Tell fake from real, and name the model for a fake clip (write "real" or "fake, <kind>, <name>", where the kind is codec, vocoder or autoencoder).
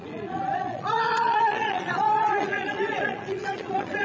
fake, vocoder, Vocos